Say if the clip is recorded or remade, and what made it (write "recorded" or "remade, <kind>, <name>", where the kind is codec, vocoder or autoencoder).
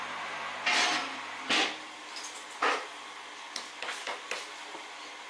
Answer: recorded